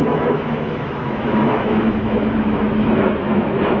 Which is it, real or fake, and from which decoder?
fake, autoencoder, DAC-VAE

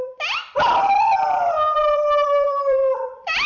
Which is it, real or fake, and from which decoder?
fake, vocoder, BigVGAN v2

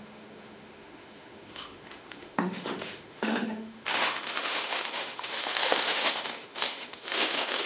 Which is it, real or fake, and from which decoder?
fake, autoencoder, DAC-VAE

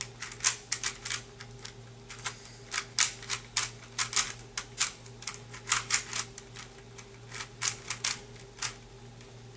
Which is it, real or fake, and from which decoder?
real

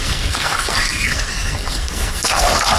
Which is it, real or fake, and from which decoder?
fake, codec, SNAC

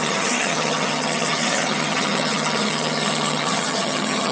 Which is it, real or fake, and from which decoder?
fake, vocoder, HiFi-GAN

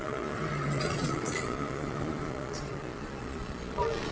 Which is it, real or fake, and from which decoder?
fake, vocoder, Vocos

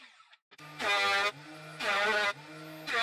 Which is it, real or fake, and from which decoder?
real